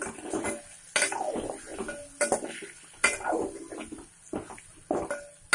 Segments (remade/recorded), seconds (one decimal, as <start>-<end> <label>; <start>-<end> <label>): 0.0-5.5 recorded

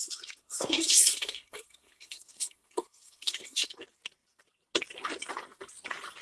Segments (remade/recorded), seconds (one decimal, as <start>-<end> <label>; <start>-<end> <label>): 0.0-3.7 remade; 3.7-6.2 recorded

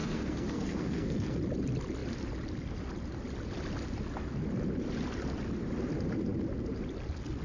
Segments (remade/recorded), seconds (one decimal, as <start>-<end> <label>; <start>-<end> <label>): 0.0-1.4 remade; 1.4-7.4 recorded

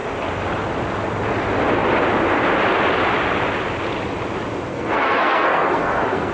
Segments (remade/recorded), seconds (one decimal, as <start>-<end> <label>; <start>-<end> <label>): 0.0-4.7 recorded; 4.7-6.3 remade